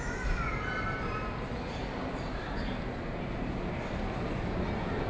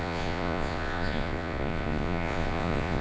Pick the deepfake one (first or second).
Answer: second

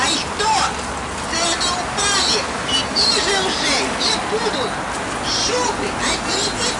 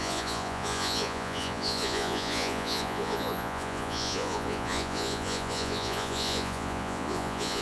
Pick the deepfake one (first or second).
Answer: second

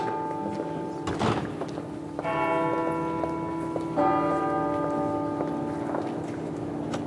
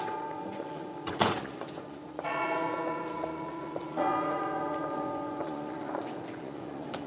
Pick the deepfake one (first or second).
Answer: second